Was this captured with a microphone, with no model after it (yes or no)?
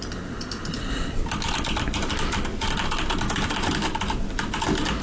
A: yes